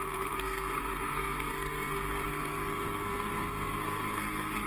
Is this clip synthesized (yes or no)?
yes